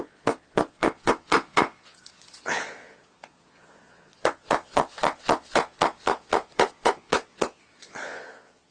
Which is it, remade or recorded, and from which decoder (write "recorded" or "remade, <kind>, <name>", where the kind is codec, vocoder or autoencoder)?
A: remade, vocoder, Vocos